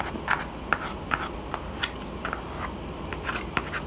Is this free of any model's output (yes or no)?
yes